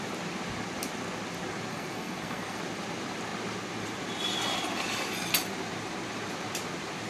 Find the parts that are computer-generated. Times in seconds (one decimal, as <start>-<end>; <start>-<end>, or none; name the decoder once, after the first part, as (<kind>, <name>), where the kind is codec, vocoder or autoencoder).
1.7-2.6 (codec, SNAC)